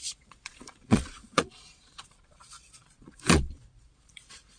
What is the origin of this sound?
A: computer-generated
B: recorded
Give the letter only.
A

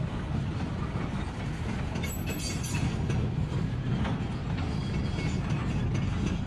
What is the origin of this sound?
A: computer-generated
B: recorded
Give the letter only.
B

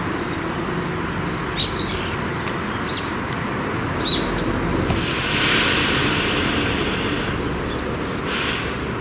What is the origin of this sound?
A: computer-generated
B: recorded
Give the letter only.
B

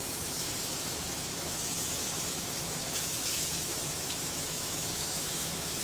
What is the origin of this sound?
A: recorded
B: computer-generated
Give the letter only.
B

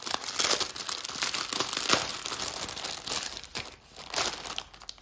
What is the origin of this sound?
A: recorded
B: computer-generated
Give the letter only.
A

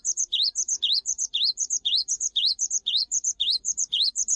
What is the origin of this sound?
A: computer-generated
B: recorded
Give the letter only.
A